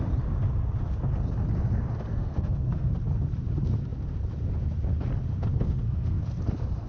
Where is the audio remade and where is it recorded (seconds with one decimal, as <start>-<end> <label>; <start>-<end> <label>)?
0.0-2.1 recorded; 2.1-2.9 remade; 2.9-5.5 recorded; 5.5-6.2 remade; 6.2-6.9 recorded